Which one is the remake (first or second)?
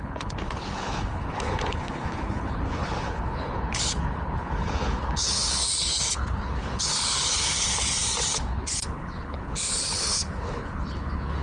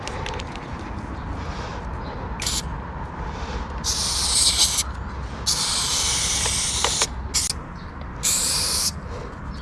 first